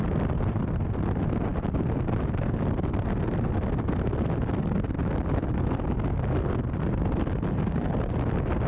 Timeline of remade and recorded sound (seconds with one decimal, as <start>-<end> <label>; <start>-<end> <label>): 0.0-5.0 recorded; 5.0-5.5 remade; 5.5-8.7 recorded